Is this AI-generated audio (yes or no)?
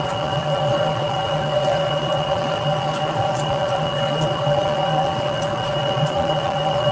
yes